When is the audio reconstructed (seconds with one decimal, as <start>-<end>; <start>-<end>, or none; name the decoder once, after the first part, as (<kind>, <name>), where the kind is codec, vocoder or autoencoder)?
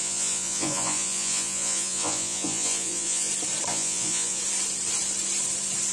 0.0-3.3 (vocoder, Vocos); 3.7-4.4